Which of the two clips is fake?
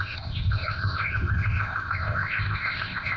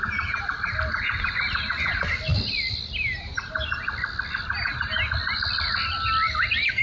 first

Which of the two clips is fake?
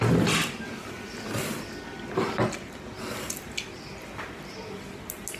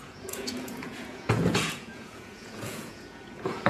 second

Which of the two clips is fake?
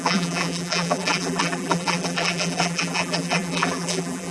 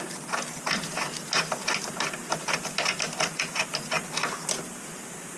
first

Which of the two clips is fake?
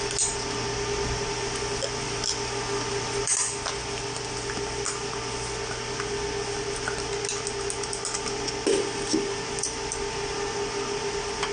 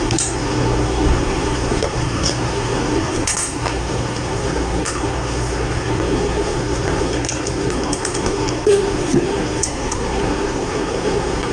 second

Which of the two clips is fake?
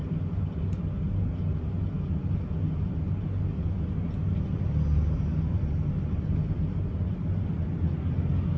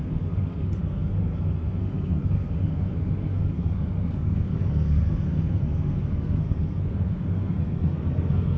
second